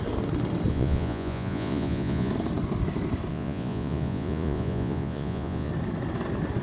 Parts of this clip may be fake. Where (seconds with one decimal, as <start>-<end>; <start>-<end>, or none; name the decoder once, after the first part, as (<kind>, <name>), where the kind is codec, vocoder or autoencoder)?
0.7-2.3 (vocoder, Vocos); 3.3-5.7